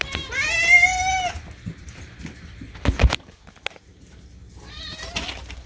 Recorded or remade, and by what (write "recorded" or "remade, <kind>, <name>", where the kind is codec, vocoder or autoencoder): recorded